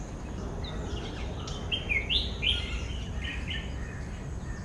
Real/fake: real